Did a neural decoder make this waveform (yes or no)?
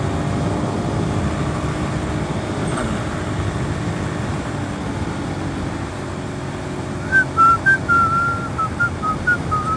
no